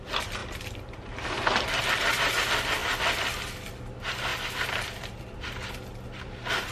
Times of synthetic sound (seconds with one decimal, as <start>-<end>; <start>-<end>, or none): 0.4-2.4; 2.8-3.7; 4.3-6.7